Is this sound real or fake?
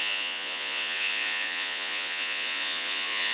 fake